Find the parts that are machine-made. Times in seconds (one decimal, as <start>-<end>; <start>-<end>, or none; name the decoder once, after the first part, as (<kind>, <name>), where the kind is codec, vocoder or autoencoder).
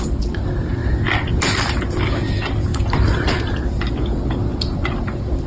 0.8-1.4 (vocoder, BigVGAN v2); 2.7-3.9